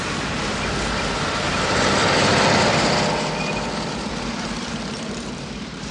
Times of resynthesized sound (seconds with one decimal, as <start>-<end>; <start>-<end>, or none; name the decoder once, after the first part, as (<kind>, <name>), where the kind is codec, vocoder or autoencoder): 0.0-2.0 (vocoder, BigVGAN v2); 4.1-5.9